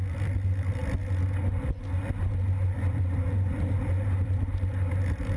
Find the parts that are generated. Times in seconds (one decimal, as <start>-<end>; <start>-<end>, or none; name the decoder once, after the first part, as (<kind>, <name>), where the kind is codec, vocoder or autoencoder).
0.0-0.8 (vocoder, BigVGAN v2); 2.3-5.4